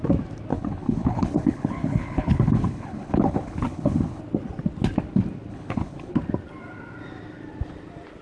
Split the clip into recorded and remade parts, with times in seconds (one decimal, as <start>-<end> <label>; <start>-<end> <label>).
0.0-0.5 recorded; 0.5-4.2 remade; 4.2-5.5 recorded; 5.5-6.1 remade; 6.1-8.2 recorded